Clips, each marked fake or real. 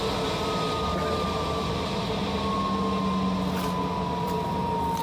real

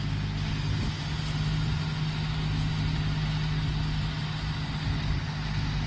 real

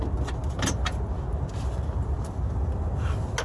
real